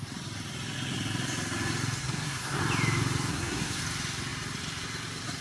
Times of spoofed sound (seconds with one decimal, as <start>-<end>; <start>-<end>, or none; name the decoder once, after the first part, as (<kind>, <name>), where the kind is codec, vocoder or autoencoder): 2.0-2.6 (codec, SNAC); 3.3-3.8